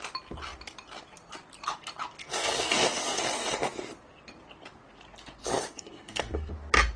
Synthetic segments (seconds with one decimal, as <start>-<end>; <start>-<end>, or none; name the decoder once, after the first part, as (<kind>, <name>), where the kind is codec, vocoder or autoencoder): 2.2-3.2 (codec, SNAC); 5.4-6.5